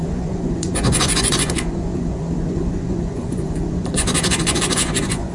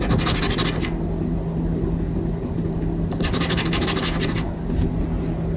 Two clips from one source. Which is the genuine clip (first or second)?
second